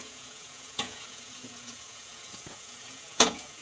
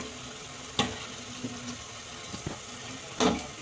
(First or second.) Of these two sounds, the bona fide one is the second